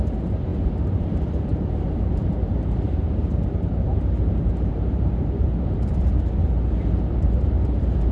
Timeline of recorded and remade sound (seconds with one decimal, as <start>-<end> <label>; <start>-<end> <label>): 0.0-6.4 remade; 6.4-7.1 recorded; 7.1-8.1 remade